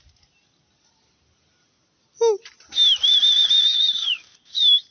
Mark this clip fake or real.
real